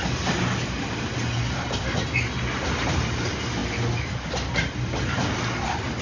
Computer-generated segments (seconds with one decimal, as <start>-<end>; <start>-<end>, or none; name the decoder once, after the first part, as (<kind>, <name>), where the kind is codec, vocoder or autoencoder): none